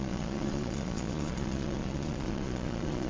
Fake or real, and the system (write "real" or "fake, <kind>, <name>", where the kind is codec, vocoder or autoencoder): fake, vocoder, Vocos